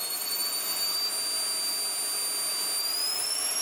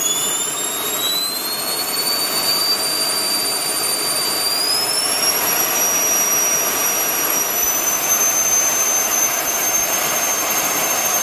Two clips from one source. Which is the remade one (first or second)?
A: second